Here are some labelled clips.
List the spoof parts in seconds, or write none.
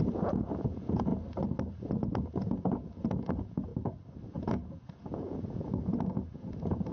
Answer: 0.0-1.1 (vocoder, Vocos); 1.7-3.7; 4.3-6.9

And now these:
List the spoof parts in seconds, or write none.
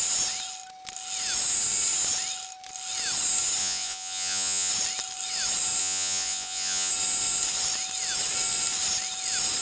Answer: 3.6-4.7 (vocoder, Vocos); 5.8-6.9